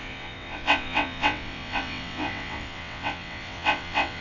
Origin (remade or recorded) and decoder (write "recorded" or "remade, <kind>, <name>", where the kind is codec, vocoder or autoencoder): remade, vocoder, WaveNeXt